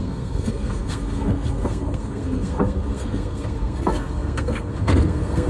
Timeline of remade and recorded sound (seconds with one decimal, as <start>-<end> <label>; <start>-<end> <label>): 0.0-5.5 remade